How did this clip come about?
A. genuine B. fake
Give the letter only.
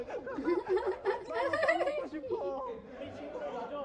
B